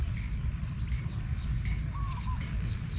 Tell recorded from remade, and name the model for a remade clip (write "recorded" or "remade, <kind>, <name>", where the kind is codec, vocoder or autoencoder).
recorded